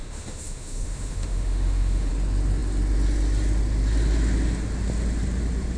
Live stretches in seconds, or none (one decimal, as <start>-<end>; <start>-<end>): 2.1-5.8

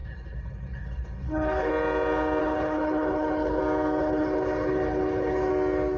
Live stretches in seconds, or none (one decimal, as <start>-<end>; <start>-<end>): 1.7-2.4; 3.6-4.0; 5.5-6.0

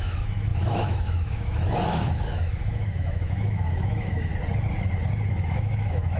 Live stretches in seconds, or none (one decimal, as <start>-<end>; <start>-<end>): 4.3-5.3

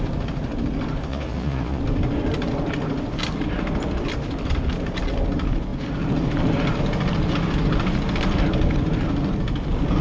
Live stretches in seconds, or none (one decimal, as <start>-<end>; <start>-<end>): 0.0-1.1; 1.8-10.0

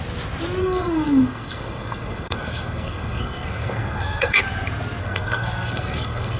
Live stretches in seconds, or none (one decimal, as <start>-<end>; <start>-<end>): 0.0-0.6; 4.4-5.0

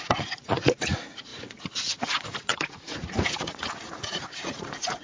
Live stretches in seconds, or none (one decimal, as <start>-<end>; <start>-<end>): none

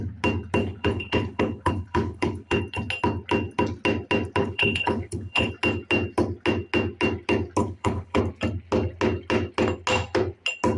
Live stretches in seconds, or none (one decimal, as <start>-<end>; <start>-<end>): 0.0-0.6; 2.6-4.4; 5.5-7.6; 8.2-10.8